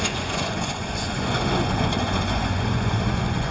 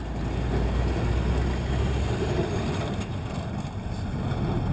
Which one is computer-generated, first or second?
first